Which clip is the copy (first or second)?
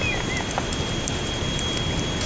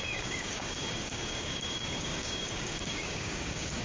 second